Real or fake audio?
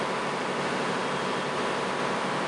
real